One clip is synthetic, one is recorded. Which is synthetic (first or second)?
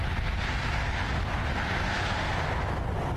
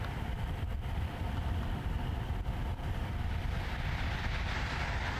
second